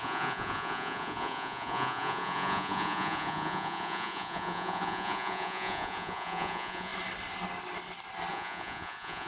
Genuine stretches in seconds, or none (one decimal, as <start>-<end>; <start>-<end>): 6.9-8.3